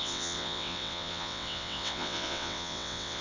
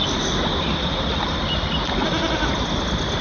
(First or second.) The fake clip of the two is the first